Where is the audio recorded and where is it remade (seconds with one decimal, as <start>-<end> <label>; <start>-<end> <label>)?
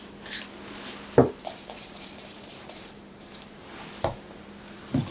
0.0-1.2 recorded; 1.2-3.7 remade; 3.7-5.1 recorded